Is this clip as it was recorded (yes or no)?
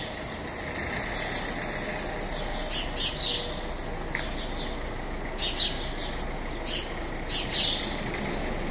yes